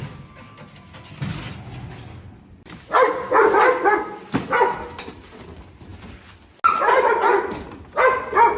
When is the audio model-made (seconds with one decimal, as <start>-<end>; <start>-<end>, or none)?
none